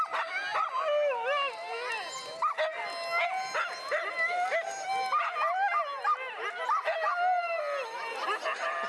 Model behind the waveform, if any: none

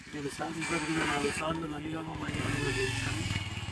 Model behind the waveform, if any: codec, SNAC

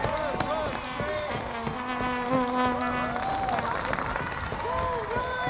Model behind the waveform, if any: none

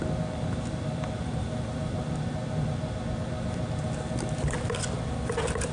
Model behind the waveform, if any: none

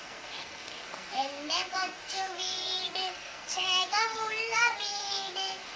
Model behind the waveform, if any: codec, SNAC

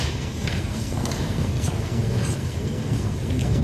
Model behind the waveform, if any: codec, SNAC